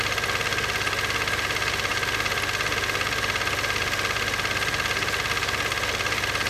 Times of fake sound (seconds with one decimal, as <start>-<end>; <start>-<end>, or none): none